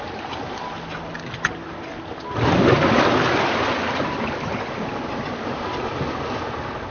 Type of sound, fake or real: real